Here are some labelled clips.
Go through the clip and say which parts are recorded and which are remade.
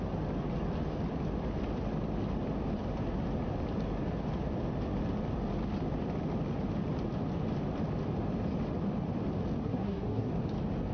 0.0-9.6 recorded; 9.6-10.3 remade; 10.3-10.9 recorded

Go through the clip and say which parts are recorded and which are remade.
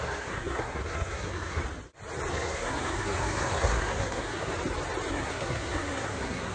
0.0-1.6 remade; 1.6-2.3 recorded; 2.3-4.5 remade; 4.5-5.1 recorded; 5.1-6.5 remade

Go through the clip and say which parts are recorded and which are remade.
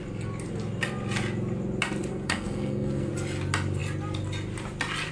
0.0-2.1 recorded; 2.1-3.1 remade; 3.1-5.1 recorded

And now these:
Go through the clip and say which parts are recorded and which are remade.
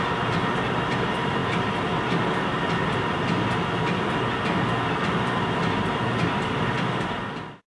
0.0-7.7 recorded